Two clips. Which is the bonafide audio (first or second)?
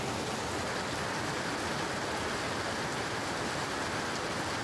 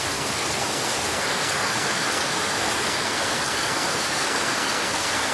first